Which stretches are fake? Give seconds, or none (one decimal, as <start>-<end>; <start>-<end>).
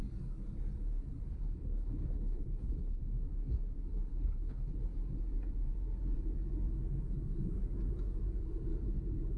1.3-3.0; 4.1-4.8